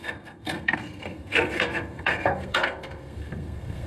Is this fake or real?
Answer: fake